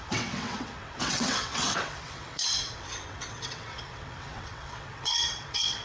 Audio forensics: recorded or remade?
remade